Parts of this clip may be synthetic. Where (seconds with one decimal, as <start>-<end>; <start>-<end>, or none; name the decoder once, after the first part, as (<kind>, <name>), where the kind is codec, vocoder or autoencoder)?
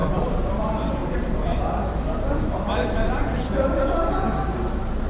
0.0-0.5 (vocoder, BigVGAN v2); 1.0-1.6